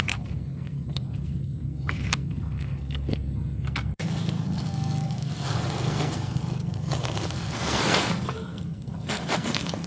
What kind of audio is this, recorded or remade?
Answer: remade